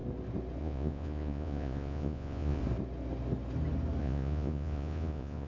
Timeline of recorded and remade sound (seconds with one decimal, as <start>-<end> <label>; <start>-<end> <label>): 0.0-0.6 recorded; 0.6-2.6 remade; 2.6-4.0 recorded; 4.0-5.5 remade